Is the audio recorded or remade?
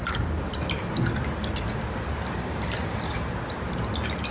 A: recorded